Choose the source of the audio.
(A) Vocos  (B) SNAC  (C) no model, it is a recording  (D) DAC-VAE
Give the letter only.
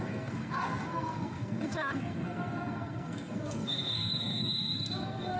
B